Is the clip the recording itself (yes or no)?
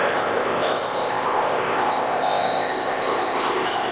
no